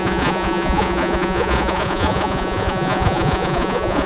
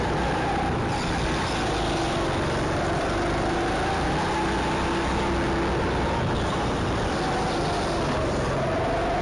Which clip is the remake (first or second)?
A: first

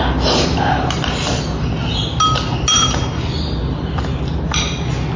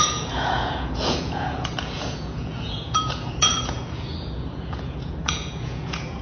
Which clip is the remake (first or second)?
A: second